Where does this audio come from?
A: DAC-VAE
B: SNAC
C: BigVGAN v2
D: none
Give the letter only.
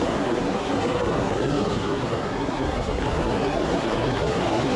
B